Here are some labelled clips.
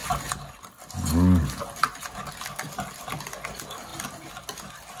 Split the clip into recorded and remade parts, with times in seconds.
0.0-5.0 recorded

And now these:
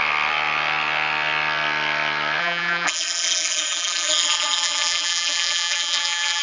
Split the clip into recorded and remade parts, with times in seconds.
0.0-2.4 recorded; 2.4-6.4 remade

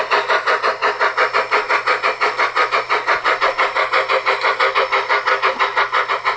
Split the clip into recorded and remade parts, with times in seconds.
0.0-0.8 remade; 0.8-4.6 recorded; 4.6-5.7 remade; 5.7-6.4 recorded